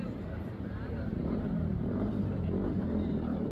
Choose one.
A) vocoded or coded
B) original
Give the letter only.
A